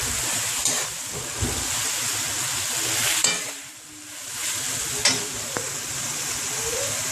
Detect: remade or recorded remade